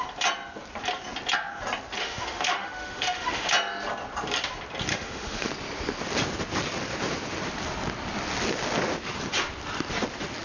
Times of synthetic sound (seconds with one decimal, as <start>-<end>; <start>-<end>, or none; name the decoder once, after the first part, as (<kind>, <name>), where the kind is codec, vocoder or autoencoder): 2.0-3.5 (autoencoder, DAC-VAE); 4.9-5.5